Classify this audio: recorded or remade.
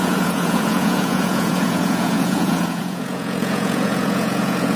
remade